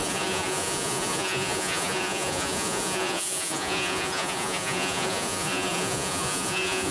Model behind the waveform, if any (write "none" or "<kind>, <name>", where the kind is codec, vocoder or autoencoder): vocoder, Vocos